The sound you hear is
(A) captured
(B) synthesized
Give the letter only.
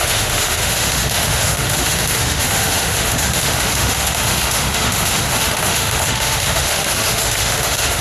B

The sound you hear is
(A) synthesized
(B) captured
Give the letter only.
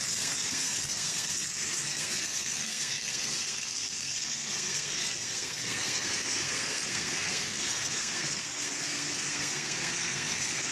A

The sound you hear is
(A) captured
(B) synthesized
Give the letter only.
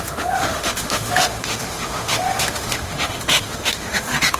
B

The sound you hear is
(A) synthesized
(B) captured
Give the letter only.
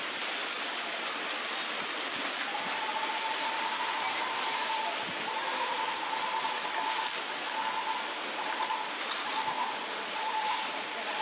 B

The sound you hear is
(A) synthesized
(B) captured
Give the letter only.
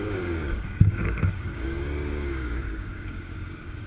A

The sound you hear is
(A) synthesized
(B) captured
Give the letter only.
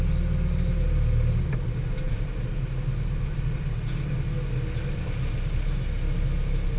B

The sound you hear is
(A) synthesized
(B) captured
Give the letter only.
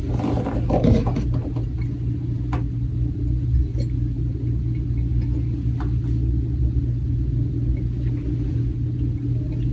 B